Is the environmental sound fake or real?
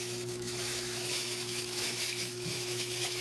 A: fake